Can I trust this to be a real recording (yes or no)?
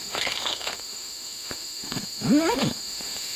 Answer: no